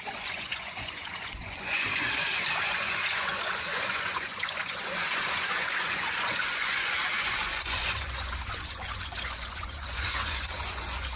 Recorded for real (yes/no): no